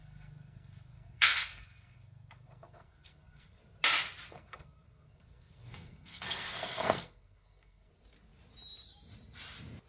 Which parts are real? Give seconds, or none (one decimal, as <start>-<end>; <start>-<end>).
3.6-4.3; 7.9-9.9